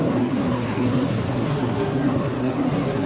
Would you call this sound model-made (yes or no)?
yes